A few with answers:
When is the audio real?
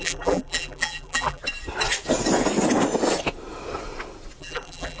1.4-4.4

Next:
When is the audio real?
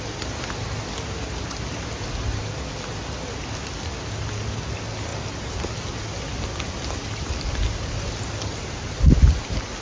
0.0-9.8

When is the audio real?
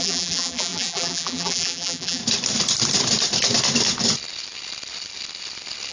2.2-5.9